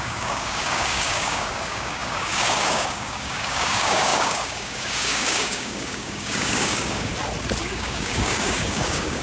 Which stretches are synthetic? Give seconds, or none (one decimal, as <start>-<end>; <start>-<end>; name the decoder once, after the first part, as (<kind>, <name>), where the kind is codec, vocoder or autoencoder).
0.0-7.1 (codec, DAC); 7.6-9.2